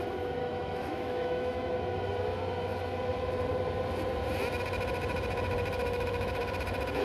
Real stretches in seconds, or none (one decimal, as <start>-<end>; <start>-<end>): 0.0-0.4; 1.7-5.8; 6.4-7.0